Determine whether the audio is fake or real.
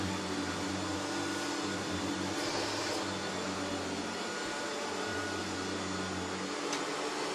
real